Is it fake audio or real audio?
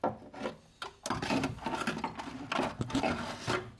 real